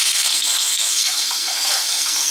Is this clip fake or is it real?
fake